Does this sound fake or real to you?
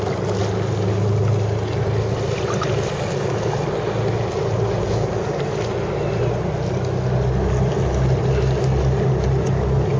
real